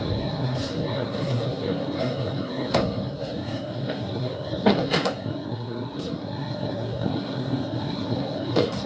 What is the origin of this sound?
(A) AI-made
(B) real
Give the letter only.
A